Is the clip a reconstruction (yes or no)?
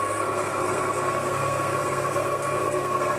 yes